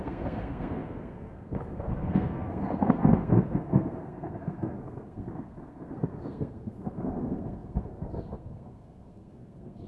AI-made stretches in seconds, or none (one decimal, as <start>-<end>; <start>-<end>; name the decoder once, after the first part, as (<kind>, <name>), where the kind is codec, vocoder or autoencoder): 0.0-9.9 (codec, SNAC)